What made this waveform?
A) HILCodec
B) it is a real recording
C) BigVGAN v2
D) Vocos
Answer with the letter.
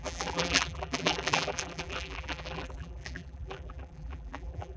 C